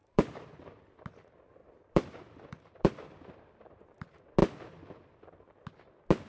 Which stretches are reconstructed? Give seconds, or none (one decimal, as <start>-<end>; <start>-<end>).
0.0-1.0; 1.6-2.9; 4.4-5.4